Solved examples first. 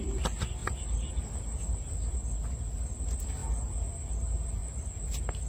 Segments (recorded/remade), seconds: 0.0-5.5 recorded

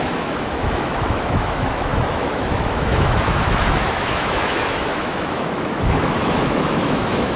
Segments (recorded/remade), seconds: 0.0-7.4 remade

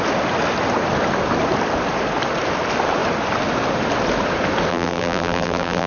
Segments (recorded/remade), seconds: 0.0-4.7 recorded; 4.7-5.9 remade